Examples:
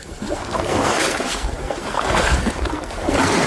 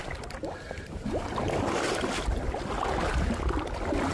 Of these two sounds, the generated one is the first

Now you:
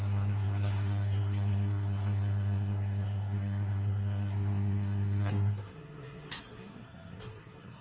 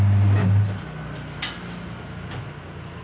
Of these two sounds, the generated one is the first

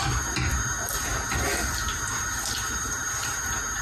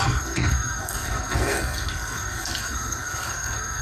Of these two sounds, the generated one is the second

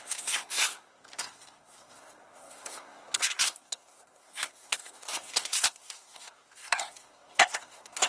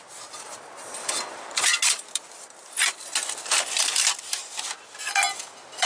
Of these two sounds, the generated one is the first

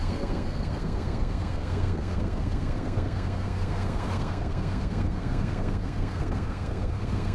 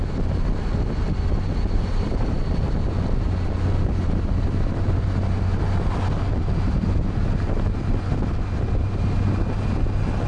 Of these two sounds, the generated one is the first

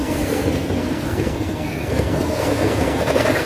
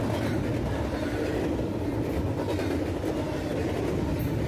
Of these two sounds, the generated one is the first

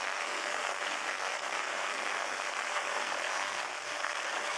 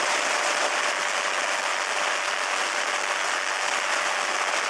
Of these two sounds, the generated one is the first